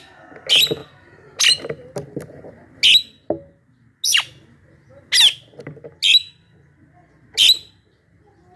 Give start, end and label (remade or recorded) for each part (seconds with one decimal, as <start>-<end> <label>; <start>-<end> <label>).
0.0-8.6 recorded